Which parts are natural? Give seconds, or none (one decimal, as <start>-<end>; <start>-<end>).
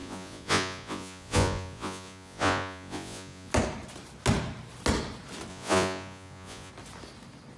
3.5-5.5; 6.7-7.6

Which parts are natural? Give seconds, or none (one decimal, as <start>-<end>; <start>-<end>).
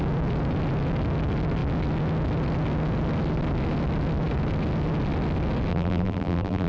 0.0-5.7